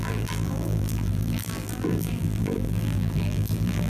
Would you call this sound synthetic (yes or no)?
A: yes